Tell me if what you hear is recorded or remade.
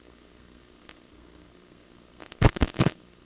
remade